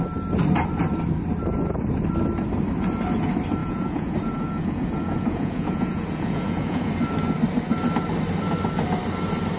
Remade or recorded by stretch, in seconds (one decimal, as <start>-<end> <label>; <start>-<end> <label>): 0.0-3.6 recorded; 3.6-6.9 remade; 6.9-9.6 recorded